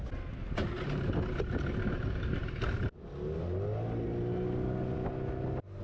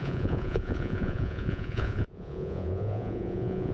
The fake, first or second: second